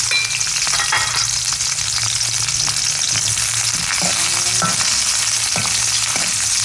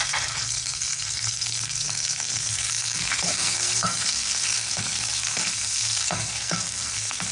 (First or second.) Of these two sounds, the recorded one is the first